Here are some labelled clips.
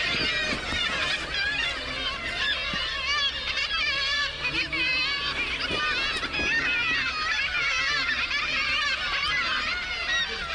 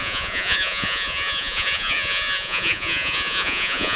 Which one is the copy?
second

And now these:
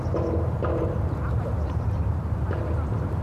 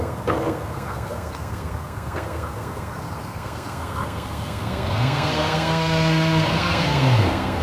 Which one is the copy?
second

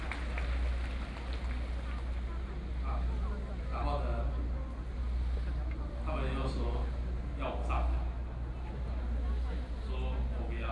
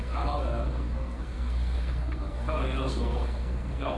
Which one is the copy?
second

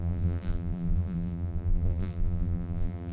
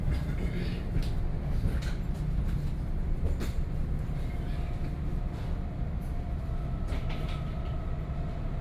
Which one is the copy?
first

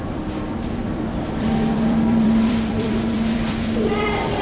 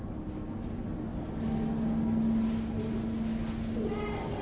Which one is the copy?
first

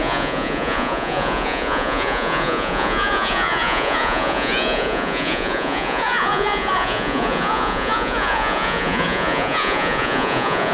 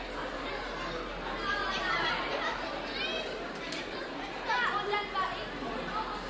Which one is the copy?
first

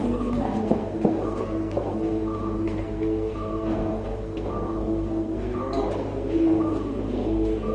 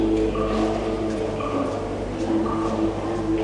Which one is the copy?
first